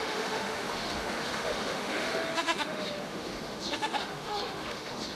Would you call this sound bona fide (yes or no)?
no